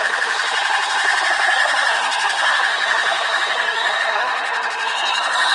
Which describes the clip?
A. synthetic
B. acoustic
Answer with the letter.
A